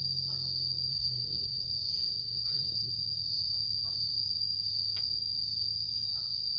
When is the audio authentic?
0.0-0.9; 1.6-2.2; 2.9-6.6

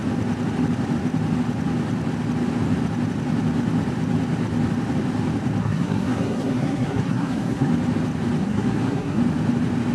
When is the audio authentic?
0.0-5.6; 7.7-8.4; 9.2-9.9

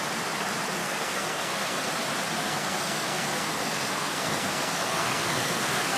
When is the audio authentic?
0.0-0.8; 1.9-2.4